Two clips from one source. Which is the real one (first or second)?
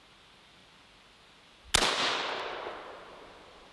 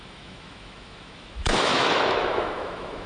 first